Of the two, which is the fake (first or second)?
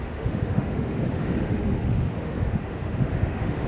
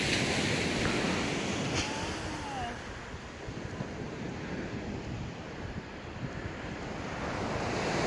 first